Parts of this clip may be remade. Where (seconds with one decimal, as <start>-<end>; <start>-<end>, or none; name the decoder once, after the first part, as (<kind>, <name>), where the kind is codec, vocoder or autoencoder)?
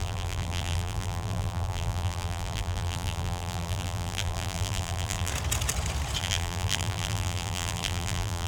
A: 0.0-5.3 (vocoder, BigVGAN v2); 6.2-8.5